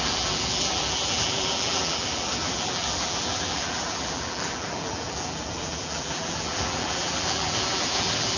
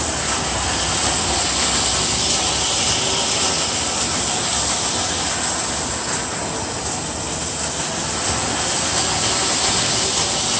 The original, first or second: second